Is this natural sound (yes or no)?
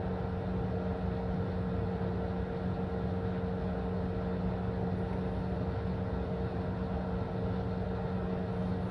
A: yes